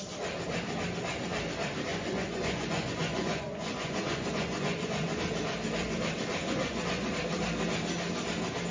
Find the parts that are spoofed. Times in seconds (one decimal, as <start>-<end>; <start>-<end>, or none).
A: 1.9-5.2; 6.4-7.1